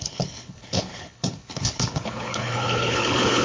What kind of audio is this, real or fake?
fake